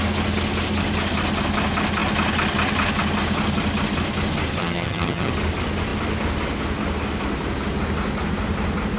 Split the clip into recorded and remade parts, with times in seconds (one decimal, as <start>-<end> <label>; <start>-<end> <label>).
0.0-4.6 recorded; 4.6-5.3 remade; 5.3-9.0 recorded